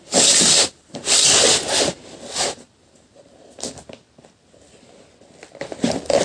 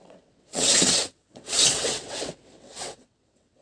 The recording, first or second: first